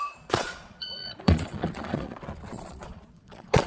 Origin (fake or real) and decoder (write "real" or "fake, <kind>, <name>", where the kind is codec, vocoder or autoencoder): fake, vocoder, Vocos